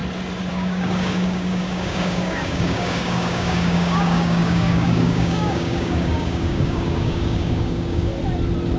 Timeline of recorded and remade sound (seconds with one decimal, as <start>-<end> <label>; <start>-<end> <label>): 0.0-0.5 recorded; 0.5-8.1 remade; 8.1-8.8 recorded